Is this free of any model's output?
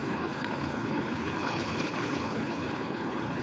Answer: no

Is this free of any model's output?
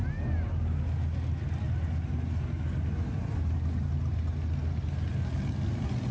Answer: yes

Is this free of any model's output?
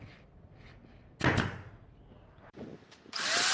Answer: yes